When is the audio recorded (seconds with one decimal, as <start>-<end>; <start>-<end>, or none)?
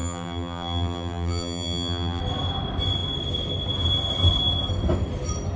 2.2-5.6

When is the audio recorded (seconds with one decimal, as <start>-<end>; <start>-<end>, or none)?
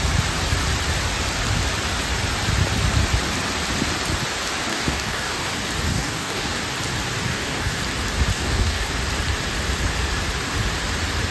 0.0-4.7; 5.5-5.9; 6.6-7.3; 7.8-8.3; 8.9-11.3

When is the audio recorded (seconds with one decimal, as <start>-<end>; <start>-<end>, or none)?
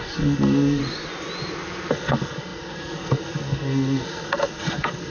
0.8-1.9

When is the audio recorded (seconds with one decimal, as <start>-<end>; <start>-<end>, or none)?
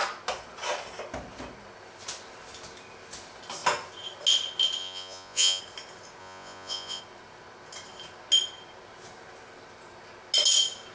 0.0-4.8; 5.6-6.2; 7.0-10.9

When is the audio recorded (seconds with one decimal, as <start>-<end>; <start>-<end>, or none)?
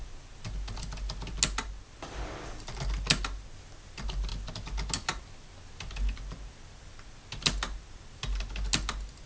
0.0-9.3